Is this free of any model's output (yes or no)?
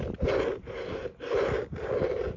yes